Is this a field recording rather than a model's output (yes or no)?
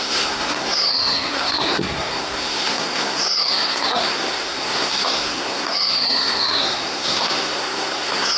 no